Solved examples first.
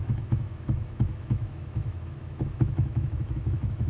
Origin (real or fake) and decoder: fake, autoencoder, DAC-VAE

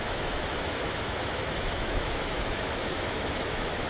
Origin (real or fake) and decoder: fake, autoencoder, DAC-VAE